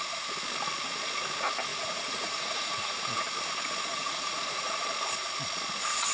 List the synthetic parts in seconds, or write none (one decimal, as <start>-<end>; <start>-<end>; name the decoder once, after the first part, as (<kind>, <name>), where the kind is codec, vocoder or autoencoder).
1.7-3.3 (vocoder, Vocos); 3.9-4.8

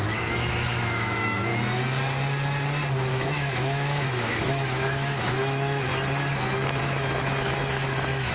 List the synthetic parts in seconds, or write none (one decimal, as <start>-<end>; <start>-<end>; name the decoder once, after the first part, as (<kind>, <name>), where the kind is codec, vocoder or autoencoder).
0.0-1.5 (autoencoder, DAC-VAE); 3.1-5.9; 6.8-8.3

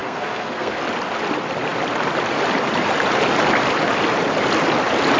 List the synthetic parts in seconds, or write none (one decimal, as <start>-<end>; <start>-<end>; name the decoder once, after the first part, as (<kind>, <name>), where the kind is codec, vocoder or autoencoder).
0.0-0.8 (codec, SNAC)

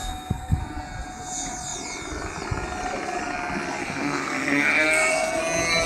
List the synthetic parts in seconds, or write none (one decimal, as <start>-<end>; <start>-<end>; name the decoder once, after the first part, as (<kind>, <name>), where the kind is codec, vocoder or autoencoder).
0.0-0.6 (codec, SNAC); 3.8-5.4

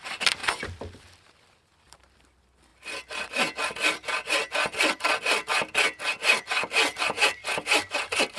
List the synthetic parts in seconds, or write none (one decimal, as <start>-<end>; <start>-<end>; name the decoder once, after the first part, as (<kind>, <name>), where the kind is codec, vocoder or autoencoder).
0.0-0.4 (vocoder, BigVGAN v2); 1.1-7.4; 8.0-8.4

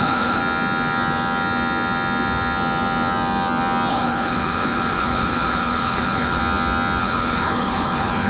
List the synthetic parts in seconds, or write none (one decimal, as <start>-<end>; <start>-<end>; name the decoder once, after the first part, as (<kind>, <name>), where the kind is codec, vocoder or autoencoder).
0.0-0.4 (codec, HILCodec); 3.9-6.4; 7.0-8.3

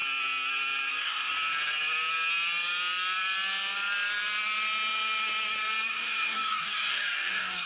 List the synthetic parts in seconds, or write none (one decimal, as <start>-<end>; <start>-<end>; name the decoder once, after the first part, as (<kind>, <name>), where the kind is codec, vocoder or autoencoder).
0.9-1.3 (codec, DAC); 5.9-7.7